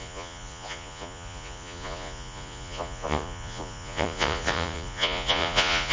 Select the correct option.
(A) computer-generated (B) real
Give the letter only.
A